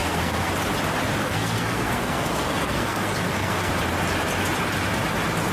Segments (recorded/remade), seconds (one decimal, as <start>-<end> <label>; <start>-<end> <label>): 0.0-0.5 remade; 0.5-1.2 recorded; 1.2-3.7 remade; 3.7-5.5 recorded